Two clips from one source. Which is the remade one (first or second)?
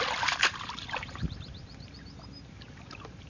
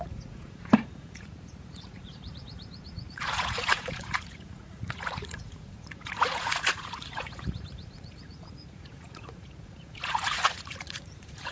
second